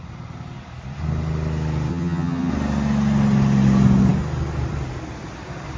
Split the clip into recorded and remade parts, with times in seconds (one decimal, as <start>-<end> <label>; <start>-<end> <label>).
0.0-1.9 recorded; 1.9-2.5 remade; 2.5-5.8 recorded